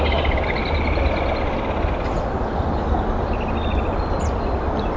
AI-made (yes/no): no